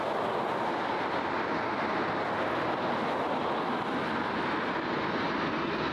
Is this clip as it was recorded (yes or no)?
yes